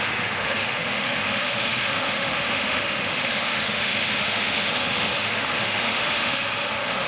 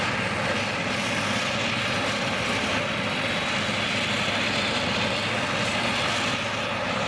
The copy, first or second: first